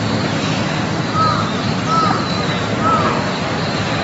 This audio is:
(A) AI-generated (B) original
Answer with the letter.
A